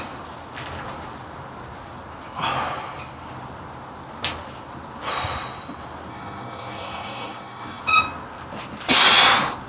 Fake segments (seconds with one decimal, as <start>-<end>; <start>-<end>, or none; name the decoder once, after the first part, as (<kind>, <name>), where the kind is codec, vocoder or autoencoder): 6.1-7.8 (codec, SNAC)